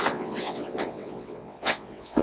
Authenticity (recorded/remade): remade